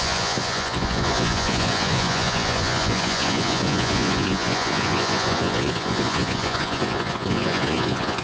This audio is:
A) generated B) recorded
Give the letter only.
A